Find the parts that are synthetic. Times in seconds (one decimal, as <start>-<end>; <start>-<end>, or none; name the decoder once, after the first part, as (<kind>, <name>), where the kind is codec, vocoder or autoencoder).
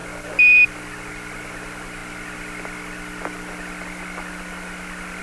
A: none